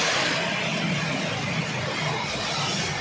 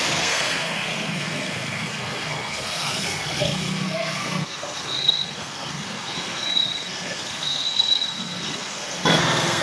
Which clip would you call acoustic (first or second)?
first